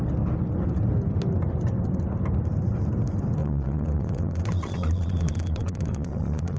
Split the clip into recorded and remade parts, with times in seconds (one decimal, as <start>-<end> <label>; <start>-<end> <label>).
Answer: 0.0-3.4 recorded; 3.4-6.6 remade